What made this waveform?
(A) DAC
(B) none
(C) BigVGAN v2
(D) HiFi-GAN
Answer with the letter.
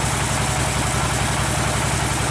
B